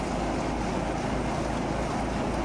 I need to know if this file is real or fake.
real